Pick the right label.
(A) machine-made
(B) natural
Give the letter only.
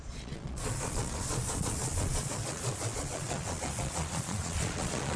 A